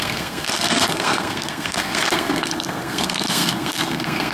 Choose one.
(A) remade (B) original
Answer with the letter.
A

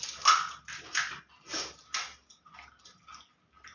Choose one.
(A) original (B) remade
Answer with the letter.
A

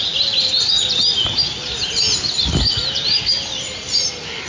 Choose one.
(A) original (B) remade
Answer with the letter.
A